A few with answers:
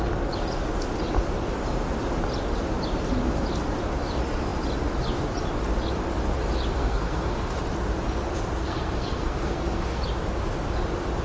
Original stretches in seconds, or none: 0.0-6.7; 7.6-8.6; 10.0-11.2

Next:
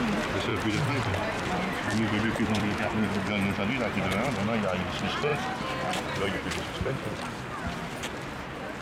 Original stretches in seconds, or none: 0.0-0.5; 2.8-5.3; 7.9-8.8

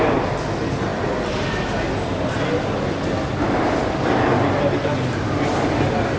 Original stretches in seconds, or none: 0.0-6.2

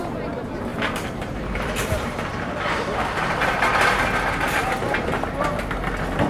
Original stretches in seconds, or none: 0.0-0.7; 4.0-6.3

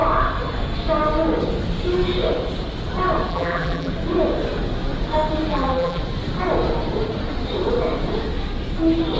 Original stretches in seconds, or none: 0.0-3.3; 3.9-5.5; 6.0-9.2

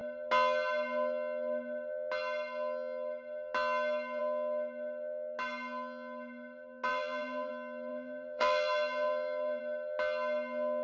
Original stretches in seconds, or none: 0.0-6.9; 7.5-7.9; 9.6-10.8

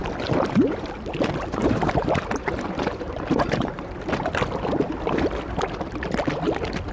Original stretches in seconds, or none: 0.0-1.6; 3.8-6.9